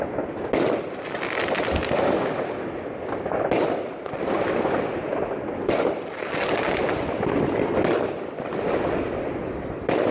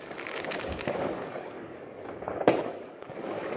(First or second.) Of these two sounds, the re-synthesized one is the second